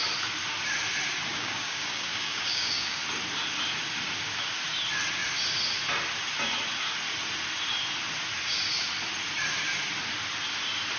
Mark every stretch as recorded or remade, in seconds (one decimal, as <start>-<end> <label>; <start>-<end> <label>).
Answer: 0.0-1.3 recorded; 1.3-3.0 remade; 3.0-11.0 recorded